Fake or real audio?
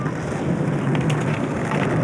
real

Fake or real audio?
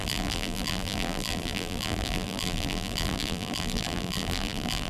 fake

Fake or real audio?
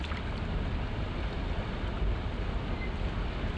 real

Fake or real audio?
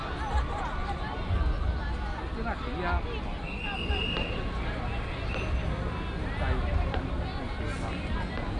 real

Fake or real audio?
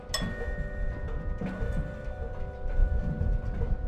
real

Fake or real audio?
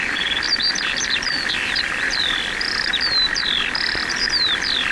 fake